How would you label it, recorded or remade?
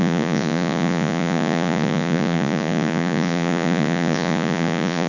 remade